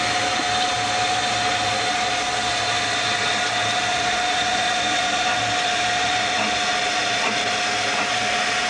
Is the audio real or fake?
real